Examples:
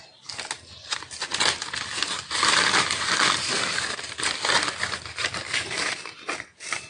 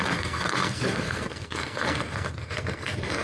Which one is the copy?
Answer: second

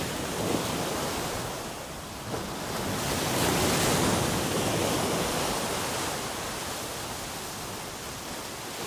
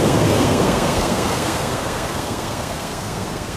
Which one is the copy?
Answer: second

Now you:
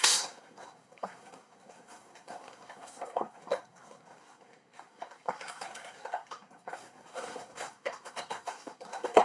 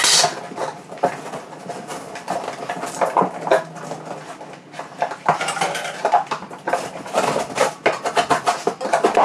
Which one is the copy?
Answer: first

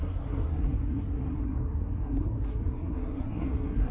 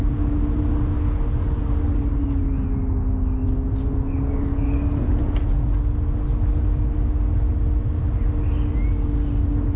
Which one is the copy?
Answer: first